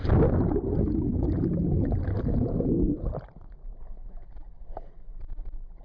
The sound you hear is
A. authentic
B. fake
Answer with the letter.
A